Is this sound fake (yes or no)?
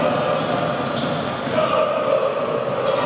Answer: no